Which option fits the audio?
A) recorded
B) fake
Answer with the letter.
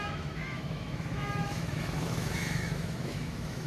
B